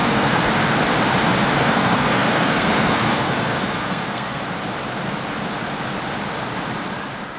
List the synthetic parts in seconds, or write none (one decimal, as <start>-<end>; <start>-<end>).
0.0-0.5; 1.6-4.4